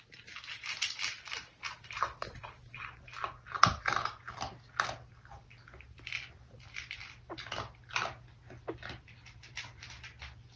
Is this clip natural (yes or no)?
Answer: yes